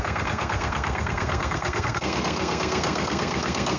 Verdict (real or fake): fake